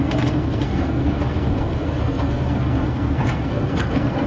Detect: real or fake fake